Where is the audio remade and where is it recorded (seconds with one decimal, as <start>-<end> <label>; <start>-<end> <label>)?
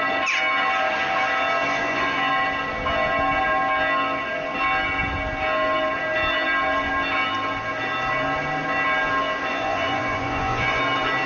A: 0.0-1.7 recorded; 1.7-2.3 remade; 2.3-9.5 recorded; 9.5-10.8 remade; 10.8-11.3 recorded